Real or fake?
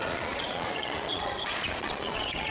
fake